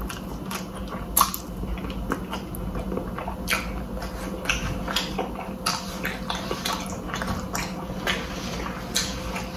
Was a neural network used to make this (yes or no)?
no